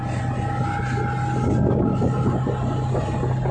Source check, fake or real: real